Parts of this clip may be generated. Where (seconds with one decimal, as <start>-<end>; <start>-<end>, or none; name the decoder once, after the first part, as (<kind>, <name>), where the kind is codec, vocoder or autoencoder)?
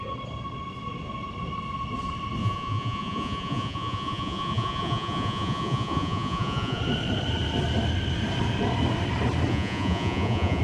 2.4-6.8 (vocoder, Vocos); 9.5-10.6